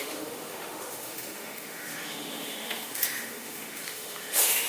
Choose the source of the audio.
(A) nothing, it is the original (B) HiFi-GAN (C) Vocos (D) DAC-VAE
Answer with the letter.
D